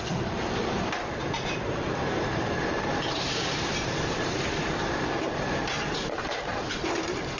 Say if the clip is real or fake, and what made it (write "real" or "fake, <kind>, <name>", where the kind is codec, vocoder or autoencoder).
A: fake, vocoder, BigVGAN v2